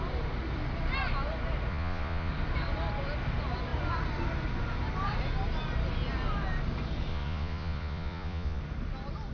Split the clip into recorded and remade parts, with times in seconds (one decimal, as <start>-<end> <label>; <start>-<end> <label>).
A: 0.0-1.7 recorded; 1.7-2.3 remade; 2.3-7.1 recorded; 7.1-8.6 remade; 8.6-9.3 recorded